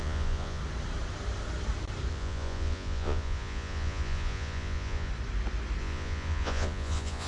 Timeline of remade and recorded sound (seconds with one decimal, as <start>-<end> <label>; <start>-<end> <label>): 0.0-0.6 remade; 0.6-2.1 recorded; 2.1-5.1 remade; 5.1-5.8 recorded; 5.8-7.3 remade